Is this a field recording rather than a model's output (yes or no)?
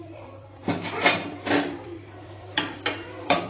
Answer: no